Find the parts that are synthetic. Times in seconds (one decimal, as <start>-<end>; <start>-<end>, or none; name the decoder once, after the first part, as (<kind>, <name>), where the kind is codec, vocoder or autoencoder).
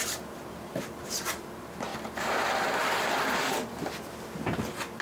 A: 0.0-1.9 (vocoder, BigVGAN v2)